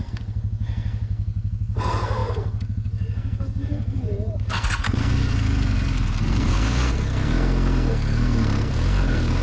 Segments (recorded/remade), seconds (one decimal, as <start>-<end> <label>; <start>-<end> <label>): 0.0-9.4 remade